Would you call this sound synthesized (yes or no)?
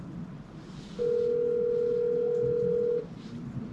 no